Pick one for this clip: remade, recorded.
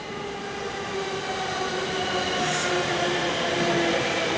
recorded